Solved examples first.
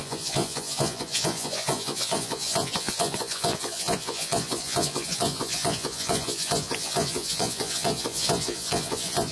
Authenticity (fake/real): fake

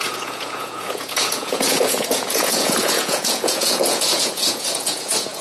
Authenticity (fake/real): fake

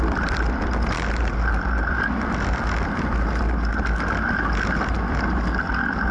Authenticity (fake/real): real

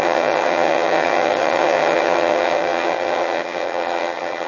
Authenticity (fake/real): fake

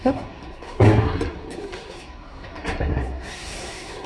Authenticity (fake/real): fake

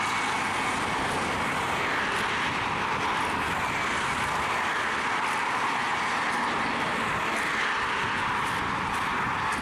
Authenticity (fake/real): real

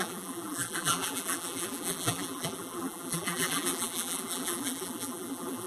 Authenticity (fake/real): fake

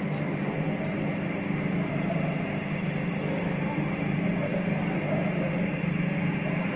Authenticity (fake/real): real